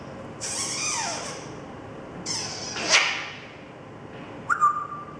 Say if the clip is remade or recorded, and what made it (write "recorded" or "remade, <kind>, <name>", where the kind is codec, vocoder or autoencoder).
recorded